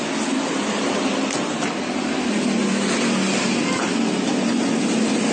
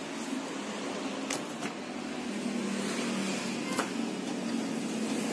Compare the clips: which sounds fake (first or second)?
first